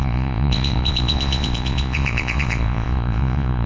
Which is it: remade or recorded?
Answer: remade